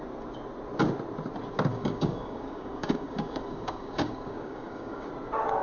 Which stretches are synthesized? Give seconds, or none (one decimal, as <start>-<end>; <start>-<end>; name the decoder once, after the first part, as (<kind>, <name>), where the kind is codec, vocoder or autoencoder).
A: 1.7-5.1 (codec, DAC)